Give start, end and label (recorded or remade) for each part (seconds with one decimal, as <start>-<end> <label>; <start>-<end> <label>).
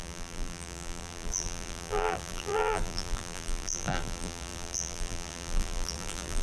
0.0-6.4 remade